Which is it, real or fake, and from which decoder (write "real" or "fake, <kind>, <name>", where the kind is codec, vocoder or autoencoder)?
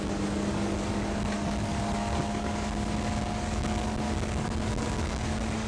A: fake, codec, DAC